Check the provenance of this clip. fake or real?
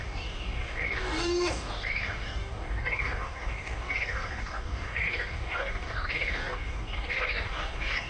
fake